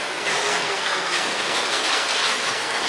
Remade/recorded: remade